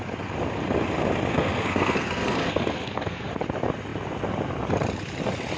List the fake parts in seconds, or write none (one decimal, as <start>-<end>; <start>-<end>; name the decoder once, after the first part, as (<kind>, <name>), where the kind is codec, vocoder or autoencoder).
1.3-3.3 (codec, SNAC)